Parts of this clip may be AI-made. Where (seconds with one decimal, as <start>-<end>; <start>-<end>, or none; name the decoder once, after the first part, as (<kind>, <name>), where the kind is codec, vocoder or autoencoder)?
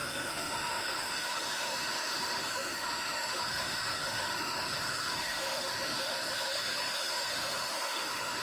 0.0-8.4 (autoencoder, DAC-VAE)